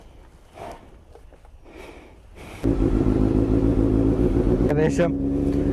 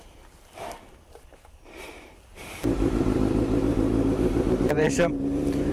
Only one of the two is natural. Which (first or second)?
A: first